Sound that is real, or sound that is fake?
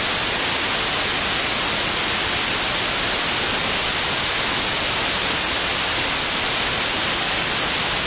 real